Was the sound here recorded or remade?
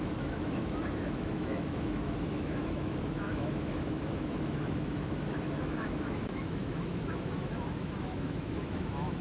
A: remade